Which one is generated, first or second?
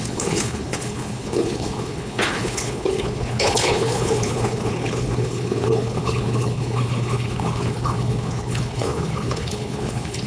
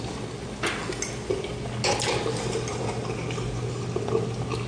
first